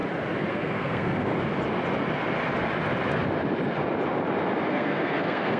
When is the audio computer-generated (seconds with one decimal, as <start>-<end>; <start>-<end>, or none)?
0.5-1.3; 4.7-5.6